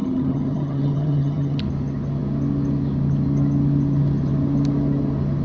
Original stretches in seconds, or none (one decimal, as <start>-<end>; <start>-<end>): 1.6-5.4